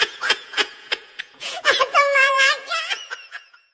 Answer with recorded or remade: remade